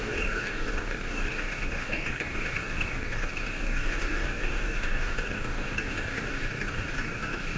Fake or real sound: fake